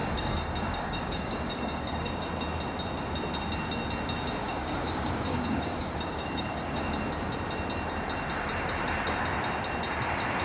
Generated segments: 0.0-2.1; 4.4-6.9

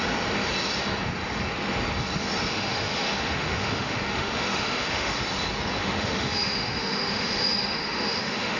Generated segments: 2.5-5.2; 5.8-8.6

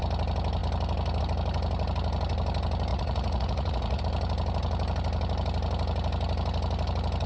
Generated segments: 2.9-4.0